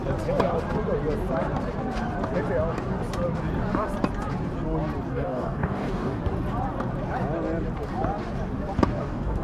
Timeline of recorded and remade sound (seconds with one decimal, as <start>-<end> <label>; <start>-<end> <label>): 0.0-5.1 recorded; 5.1-6.2 remade; 6.2-9.0 recorded; 9.0-9.4 remade